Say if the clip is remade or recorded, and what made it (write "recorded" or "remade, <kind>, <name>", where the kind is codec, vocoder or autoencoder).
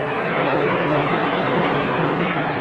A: remade, codec, SNAC